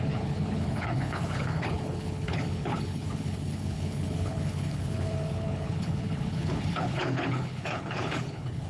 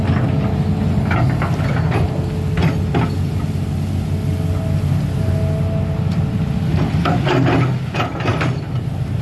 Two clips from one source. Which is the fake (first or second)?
first